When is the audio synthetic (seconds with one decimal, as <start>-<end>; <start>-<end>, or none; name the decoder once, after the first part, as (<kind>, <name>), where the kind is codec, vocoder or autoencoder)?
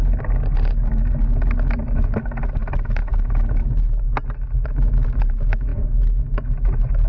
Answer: 5.7-6.2 (vocoder, Vocos)